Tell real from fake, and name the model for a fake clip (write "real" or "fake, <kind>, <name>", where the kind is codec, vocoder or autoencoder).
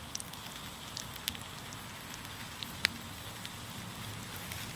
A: real